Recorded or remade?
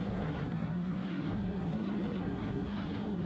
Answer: remade